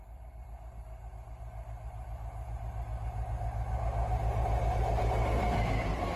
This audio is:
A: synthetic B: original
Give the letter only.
B